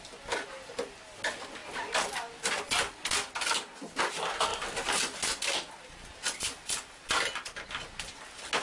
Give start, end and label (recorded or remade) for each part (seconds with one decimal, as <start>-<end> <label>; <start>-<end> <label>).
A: 0.0-8.6 recorded